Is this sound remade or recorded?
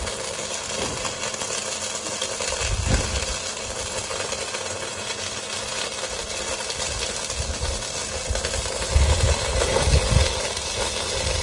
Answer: recorded